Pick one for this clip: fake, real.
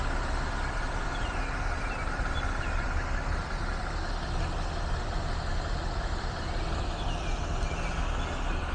real